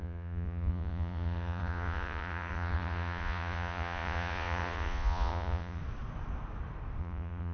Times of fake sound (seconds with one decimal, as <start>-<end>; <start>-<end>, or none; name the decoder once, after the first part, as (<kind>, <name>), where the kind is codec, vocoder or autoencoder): 0.0-5.8 (vocoder, Vocos); 7.0-7.5